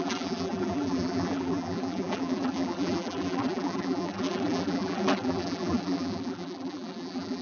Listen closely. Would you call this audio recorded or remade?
remade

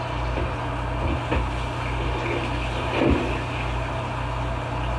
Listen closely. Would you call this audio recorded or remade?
recorded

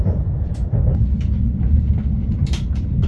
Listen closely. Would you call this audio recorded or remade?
recorded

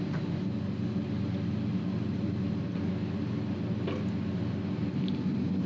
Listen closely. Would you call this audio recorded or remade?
recorded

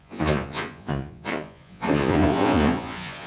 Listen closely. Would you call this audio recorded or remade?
remade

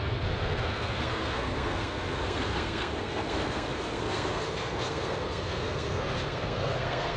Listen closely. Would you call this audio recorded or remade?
remade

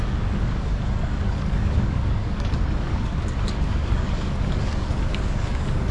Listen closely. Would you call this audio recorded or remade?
remade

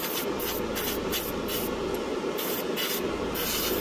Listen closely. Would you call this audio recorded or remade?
recorded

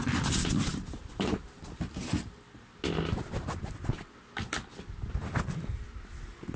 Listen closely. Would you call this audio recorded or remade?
recorded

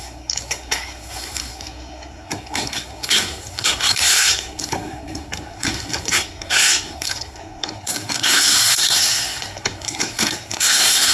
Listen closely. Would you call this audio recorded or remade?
remade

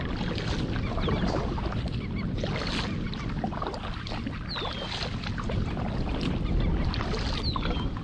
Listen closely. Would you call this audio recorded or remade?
recorded